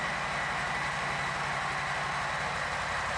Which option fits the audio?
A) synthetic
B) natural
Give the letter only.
B